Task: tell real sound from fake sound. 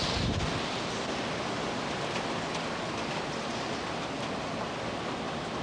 real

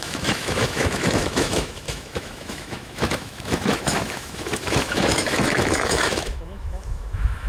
fake